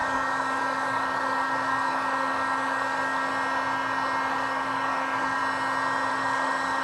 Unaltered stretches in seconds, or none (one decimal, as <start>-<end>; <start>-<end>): 3.3-4.3; 5.4-6.1